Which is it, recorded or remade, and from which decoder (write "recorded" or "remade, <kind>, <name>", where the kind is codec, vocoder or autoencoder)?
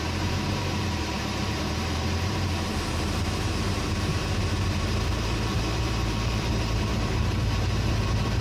remade, vocoder, BigVGAN v2